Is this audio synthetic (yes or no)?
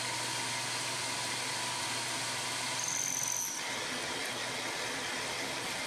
no